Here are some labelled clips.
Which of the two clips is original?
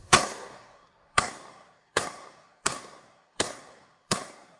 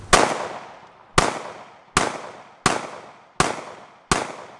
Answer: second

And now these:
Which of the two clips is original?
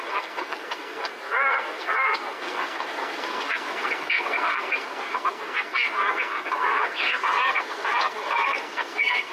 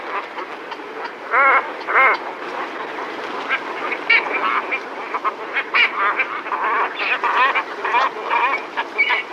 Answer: second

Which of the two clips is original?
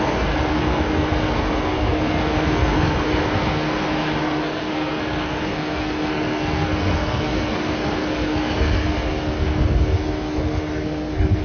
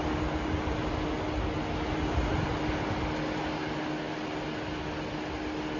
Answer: second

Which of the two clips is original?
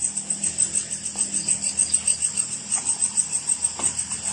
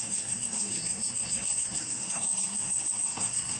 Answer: first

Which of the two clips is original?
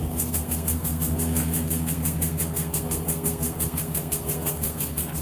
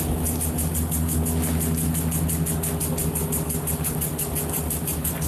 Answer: second